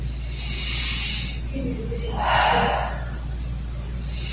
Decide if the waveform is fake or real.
real